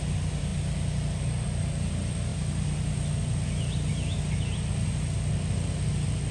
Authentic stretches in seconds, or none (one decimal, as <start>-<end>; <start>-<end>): 0.0-6.3